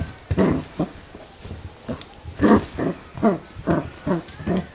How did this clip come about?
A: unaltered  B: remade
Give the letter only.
A